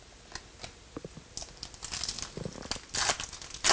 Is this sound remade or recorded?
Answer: recorded